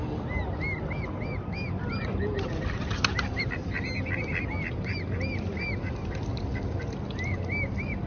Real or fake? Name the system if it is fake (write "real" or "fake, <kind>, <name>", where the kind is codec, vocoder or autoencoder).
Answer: real